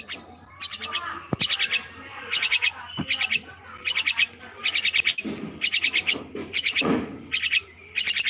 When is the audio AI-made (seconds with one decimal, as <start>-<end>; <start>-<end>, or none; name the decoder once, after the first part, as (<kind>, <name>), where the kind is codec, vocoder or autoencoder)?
2.1-2.7 (vocoder, Vocos); 6.4-7.0